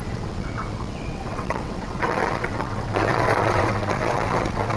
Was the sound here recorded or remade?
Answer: remade